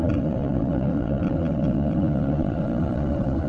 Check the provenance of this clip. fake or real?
fake